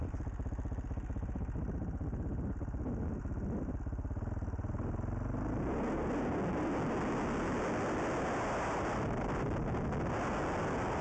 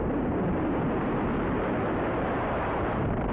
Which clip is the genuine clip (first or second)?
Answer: first